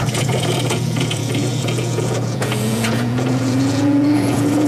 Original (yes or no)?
no